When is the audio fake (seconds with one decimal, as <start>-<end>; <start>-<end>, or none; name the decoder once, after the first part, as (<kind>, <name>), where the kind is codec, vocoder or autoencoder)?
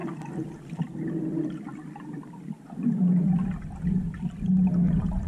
0.0-0.8 (vocoder, BigVGAN v2)